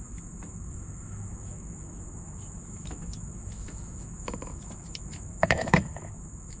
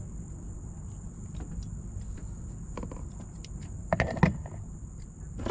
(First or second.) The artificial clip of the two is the first